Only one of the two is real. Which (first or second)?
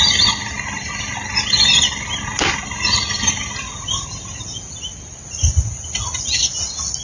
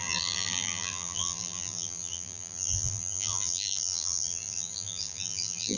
first